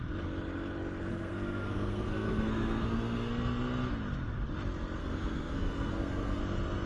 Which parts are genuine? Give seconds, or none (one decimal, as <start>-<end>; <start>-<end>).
0.0-1.1; 3.3-5.0; 6.4-6.9